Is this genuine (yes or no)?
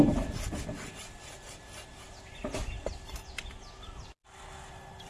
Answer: yes